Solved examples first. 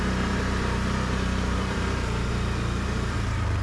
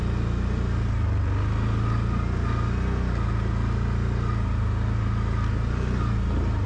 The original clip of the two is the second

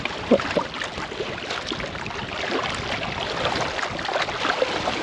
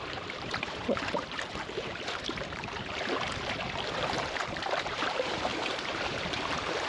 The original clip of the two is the first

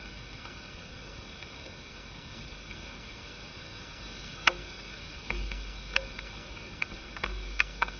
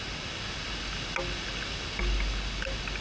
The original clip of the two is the second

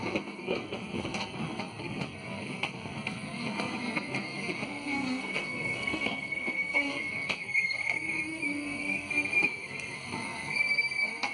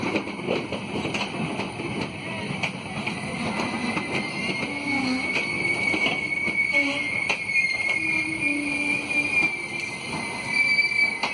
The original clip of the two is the second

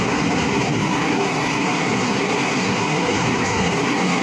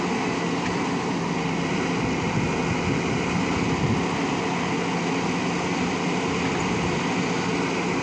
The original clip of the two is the second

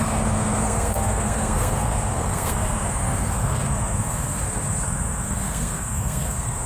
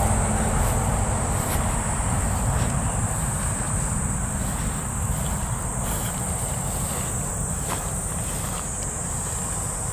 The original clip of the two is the second